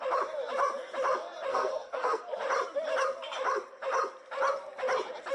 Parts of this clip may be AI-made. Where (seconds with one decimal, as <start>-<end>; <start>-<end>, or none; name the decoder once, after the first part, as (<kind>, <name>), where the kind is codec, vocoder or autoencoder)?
1.5-2.2 (codec, SNAC)